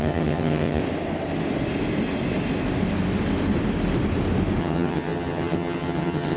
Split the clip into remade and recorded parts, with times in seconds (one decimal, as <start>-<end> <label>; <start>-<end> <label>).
0.0-0.8 remade; 0.8-4.6 recorded; 4.6-6.4 remade